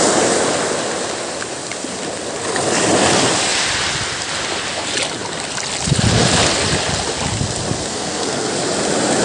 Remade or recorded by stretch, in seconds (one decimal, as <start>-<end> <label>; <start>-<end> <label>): 0.0-7.9 recorded; 7.9-8.5 remade; 8.5-9.2 recorded